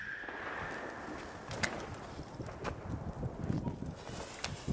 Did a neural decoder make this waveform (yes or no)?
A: no